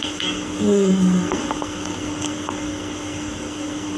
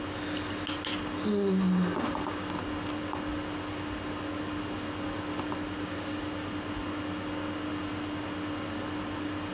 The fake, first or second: first